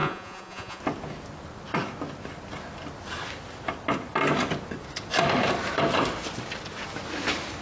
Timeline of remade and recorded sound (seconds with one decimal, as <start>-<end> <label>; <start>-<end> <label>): 0.0-0.8 remade; 0.8-7.6 recorded